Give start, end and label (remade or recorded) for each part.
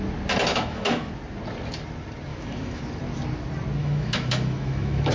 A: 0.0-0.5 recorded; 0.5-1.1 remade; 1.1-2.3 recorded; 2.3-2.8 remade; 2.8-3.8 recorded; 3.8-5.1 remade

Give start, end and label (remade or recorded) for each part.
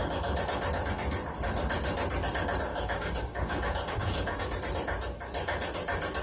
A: 0.0-2.7 recorded; 2.7-4.4 remade; 4.4-6.2 recorded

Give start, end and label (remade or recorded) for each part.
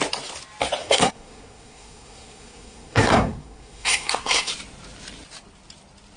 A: 0.0-0.8 recorded; 0.8-4.5 remade; 4.5-6.2 recorded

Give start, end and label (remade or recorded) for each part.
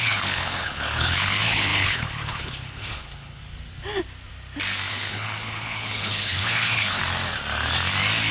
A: 0.0-3.4 remade; 3.4-4.9 recorded; 4.9-7.0 remade; 7.0-8.3 recorded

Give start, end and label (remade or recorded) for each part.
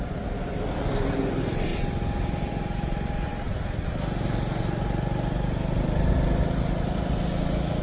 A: 0.0-7.8 recorded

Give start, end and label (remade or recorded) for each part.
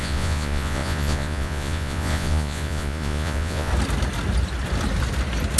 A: 0.0-3.7 remade; 3.7-5.6 recorded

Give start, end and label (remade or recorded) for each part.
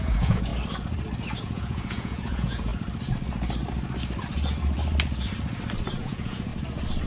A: 0.0-0.5 remade; 0.5-1.4 recorded; 1.4-2.7 remade; 2.7-6.0 recorded; 6.0-6.5 remade; 6.5-7.1 recorded